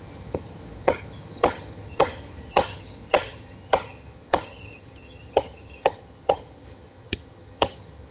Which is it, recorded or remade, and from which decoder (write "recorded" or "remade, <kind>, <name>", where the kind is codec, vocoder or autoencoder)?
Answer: remade, vocoder, HiFi-GAN